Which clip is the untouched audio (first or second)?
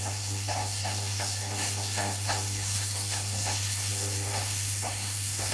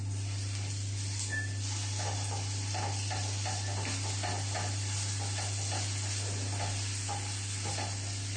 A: second